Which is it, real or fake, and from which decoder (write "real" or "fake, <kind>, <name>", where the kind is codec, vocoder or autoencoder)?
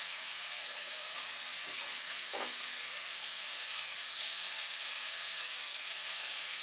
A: fake, codec, SNAC